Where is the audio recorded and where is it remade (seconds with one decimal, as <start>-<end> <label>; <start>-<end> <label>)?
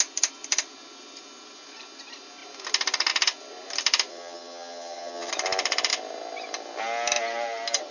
0.0-4.1 recorded; 4.1-5.3 remade; 5.3-7.9 recorded